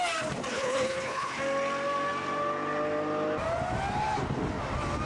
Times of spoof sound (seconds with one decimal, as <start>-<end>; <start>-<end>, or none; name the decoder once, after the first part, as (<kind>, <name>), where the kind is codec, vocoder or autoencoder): 0.5-1.4 (codec, HILCodec)